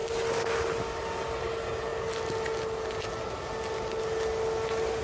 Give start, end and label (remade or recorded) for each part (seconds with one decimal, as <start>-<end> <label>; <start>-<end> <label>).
0.0-5.0 recorded